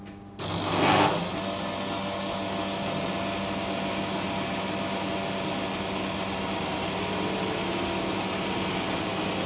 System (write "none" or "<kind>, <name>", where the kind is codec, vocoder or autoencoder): none